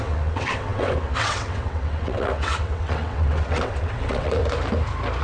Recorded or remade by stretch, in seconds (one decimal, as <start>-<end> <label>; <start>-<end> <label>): 0.0-4.4 remade; 4.4-5.2 recorded